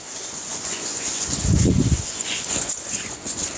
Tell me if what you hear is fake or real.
fake